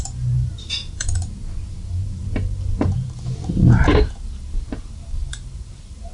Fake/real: fake